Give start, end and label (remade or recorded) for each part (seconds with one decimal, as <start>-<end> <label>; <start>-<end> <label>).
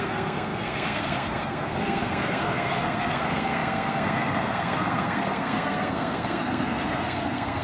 0.0-7.6 remade